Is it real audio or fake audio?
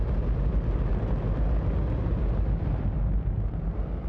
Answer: real